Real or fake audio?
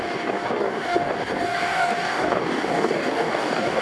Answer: fake